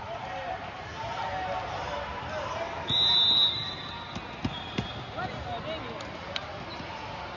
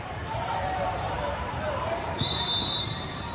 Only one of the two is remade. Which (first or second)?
second